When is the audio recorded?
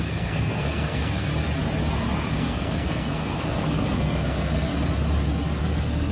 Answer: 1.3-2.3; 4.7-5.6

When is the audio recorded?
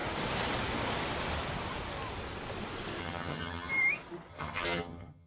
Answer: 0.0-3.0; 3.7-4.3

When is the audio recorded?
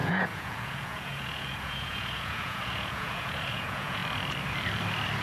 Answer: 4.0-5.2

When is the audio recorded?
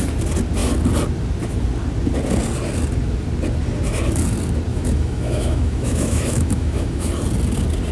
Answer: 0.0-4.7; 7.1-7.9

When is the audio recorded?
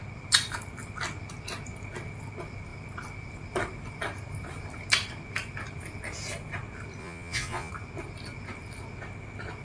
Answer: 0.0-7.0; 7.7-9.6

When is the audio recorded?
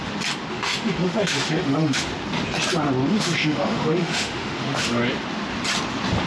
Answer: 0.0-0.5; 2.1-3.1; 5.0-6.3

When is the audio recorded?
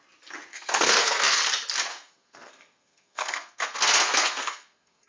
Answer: 0.0-0.5; 1.4-1.9